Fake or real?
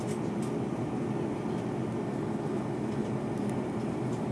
real